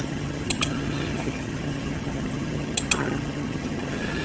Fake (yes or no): yes